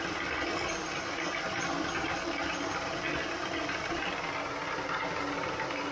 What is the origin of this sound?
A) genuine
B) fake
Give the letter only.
A